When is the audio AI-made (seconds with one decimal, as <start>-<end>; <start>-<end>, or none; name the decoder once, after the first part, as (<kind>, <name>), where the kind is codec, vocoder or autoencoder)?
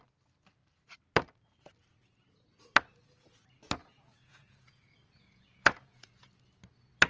3.8-6.3 (vocoder, Vocos)